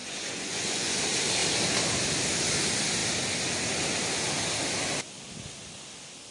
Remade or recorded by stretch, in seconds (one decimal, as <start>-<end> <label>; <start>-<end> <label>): 0.0-1.0 remade; 1.0-6.3 recorded